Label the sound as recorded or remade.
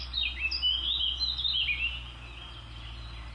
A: recorded